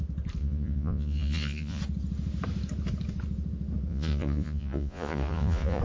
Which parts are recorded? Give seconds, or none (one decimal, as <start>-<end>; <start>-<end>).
0.0-0.4; 1.8-3.9